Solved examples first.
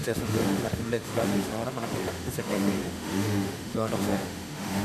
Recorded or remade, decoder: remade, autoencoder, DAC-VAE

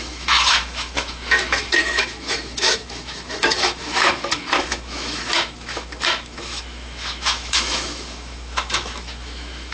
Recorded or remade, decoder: remade, autoencoder, DAC-VAE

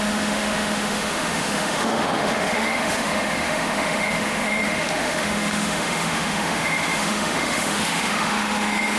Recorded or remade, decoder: remade, autoencoder, DAC-VAE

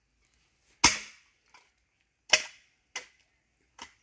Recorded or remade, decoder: recorded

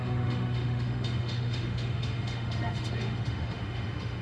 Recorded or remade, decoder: remade, autoencoder, DAC-VAE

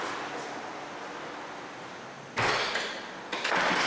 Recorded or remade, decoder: recorded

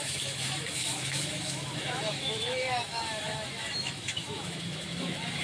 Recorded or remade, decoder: remade, autoencoder, DAC-VAE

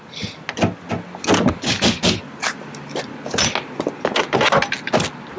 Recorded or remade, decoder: recorded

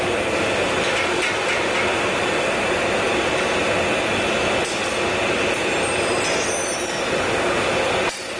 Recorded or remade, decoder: recorded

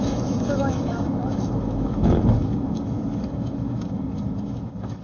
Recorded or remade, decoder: remade, autoencoder, DAC-VAE